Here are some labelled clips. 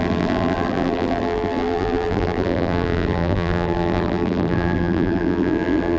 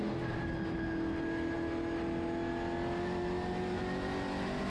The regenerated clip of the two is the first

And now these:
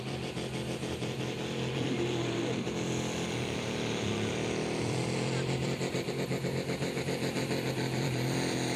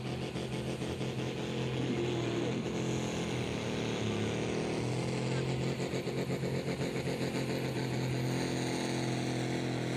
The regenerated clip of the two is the first